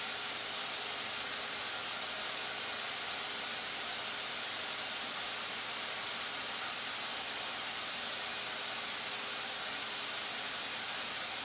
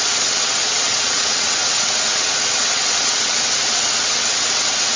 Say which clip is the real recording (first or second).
first